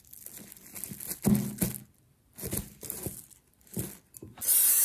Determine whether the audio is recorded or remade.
recorded